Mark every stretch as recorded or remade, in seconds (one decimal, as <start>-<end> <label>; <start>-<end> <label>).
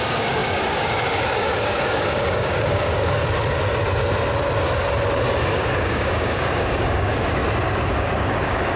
0.0-3.2 remade; 3.2-5.4 recorded; 5.4-7.4 remade; 7.4-7.9 recorded; 7.9-8.8 remade